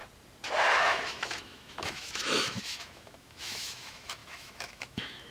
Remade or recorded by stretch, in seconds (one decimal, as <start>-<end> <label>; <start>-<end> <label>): 0.0-0.8 recorded; 0.8-5.3 remade